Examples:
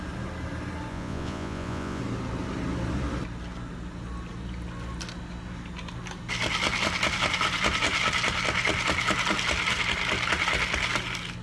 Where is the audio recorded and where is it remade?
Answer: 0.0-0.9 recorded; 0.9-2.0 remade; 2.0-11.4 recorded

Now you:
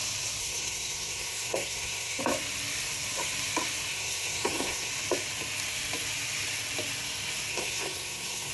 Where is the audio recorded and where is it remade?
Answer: 0.0-0.4 recorded; 0.4-2.2 remade; 2.2-3.9 recorded; 3.9-4.9 remade; 4.9-7.5 recorded; 7.5-8.5 remade

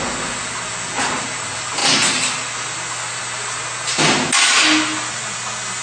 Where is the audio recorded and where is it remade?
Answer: 0.0-5.8 recorded

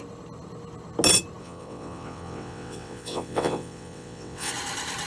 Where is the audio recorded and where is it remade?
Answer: 0.0-1.4 recorded; 1.4-4.5 remade; 4.5-5.1 recorded